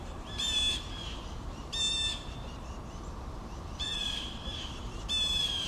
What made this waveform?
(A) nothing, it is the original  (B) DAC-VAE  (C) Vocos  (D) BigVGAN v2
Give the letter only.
D